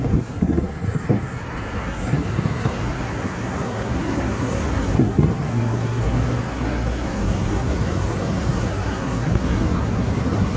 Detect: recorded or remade remade